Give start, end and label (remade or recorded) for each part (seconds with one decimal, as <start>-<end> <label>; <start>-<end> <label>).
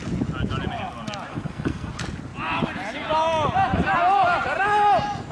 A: 0.0-1.3 recorded; 1.3-1.9 remade; 1.9-5.3 recorded